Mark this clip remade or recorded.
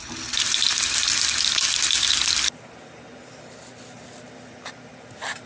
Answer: recorded